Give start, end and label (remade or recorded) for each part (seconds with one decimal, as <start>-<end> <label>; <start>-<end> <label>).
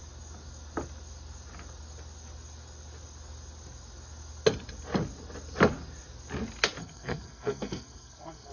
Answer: 0.0-6.8 recorded; 6.8-8.5 remade